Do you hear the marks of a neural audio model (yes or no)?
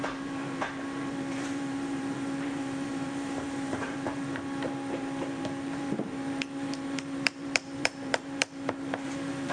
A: yes